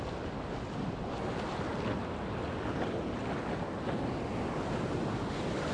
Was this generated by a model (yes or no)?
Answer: no